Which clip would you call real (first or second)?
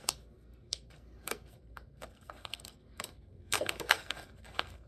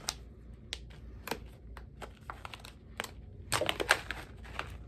second